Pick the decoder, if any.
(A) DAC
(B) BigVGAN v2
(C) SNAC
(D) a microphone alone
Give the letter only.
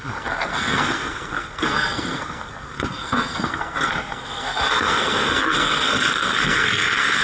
C